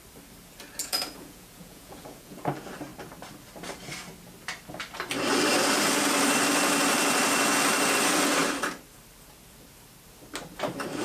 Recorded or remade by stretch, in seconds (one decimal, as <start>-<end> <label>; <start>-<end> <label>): 0.0-0.8 recorded; 0.8-2.5 remade; 2.5-11.0 recorded